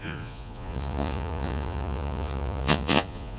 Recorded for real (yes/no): no